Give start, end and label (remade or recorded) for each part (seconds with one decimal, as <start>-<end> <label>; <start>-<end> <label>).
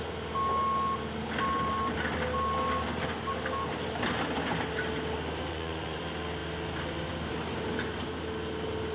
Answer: 0.0-5.5 recorded; 5.5-6.0 remade; 6.0-8.9 recorded